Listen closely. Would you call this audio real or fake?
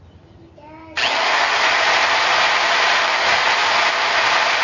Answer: real